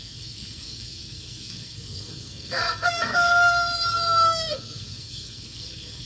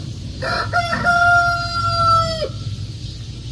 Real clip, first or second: second